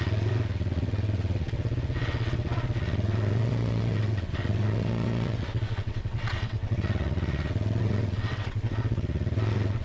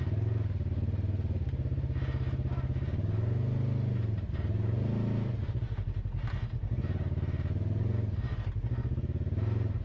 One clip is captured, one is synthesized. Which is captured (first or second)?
second